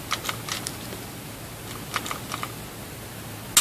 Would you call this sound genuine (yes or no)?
yes